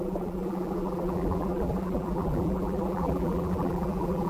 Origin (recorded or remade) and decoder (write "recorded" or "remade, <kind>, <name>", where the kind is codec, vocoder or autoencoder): remade, vocoder, BigVGAN v2